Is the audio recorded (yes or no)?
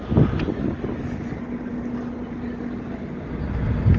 yes